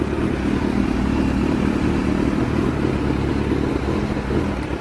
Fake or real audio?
real